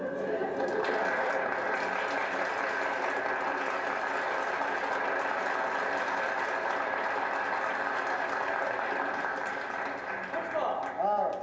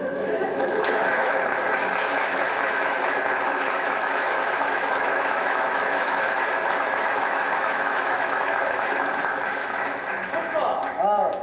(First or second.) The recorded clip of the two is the first